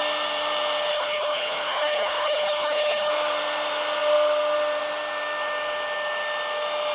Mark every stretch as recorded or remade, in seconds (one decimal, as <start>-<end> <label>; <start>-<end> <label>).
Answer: 0.0-0.9 recorded; 0.9-3.1 remade; 3.1-6.9 recorded